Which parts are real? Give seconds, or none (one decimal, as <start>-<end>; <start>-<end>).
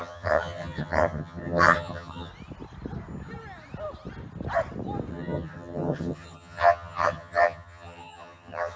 2.3-5.1